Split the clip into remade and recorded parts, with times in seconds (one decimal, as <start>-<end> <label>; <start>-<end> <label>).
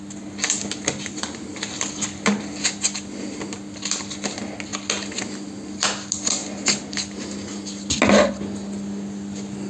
0.0-9.7 recorded